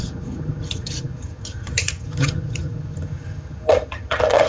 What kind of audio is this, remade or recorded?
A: remade